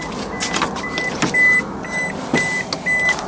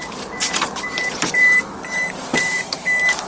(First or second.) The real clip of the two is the first